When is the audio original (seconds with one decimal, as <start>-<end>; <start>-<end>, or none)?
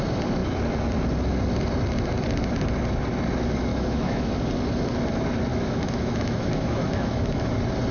0.0-3.7; 4.3-5.5; 7.5-7.9